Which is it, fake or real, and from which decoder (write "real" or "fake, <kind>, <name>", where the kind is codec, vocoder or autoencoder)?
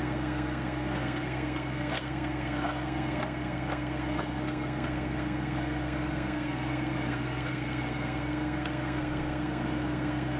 fake, codec, SNAC